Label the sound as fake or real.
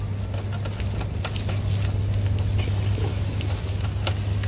real